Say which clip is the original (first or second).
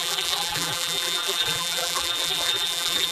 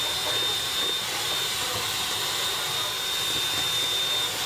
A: second